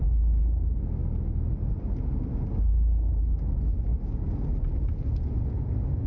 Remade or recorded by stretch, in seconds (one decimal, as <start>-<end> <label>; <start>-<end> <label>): 0.0-6.1 recorded